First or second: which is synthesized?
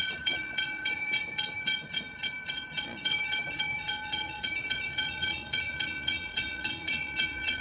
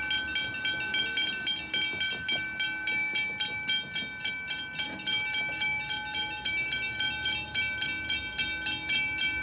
first